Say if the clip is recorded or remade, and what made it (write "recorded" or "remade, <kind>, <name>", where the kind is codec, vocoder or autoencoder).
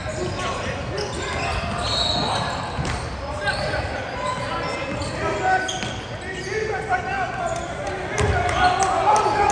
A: recorded